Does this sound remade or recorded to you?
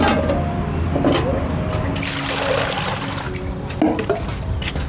recorded